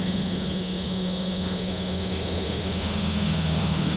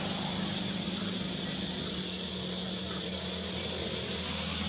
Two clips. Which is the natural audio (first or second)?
second